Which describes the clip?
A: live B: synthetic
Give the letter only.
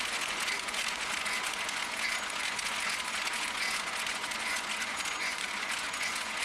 B